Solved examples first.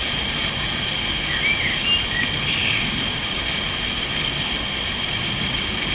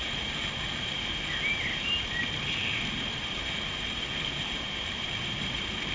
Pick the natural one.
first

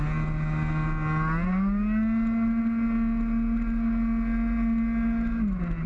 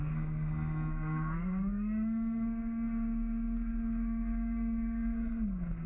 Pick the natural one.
first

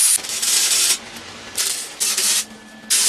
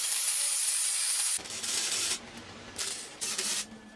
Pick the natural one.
first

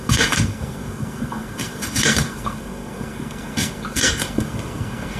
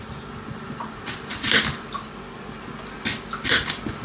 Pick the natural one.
second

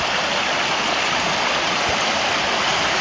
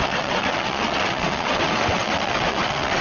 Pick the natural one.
first